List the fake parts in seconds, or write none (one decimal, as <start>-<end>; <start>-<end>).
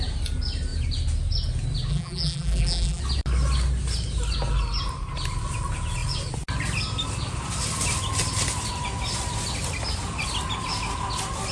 1.9-3.0